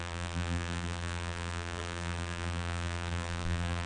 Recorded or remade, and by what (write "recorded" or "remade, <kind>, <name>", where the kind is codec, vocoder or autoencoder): remade, vocoder, BigVGAN v2